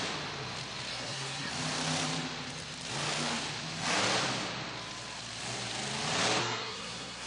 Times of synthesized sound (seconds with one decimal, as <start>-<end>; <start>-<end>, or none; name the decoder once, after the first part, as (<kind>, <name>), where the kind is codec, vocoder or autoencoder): 0.9-1.5 (codec, SNAC); 6.4-7.3